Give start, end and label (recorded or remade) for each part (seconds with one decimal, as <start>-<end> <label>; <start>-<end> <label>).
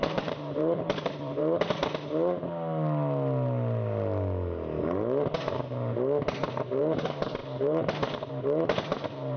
0.0-1.8 remade; 1.8-6.8 recorded; 6.8-9.4 remade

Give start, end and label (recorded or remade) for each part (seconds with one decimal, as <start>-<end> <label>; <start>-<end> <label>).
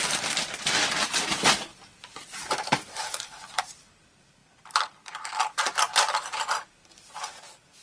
0.0-1.7 recorded; 1.7-3.6 remade; 3.6-7.8 recorded